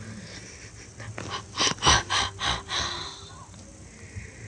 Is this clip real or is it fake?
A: real